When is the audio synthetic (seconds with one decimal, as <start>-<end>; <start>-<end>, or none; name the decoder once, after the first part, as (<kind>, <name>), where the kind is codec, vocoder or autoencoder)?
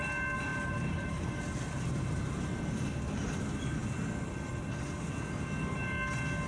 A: 0.5-2.6 (vocoder, BigVGAN v2)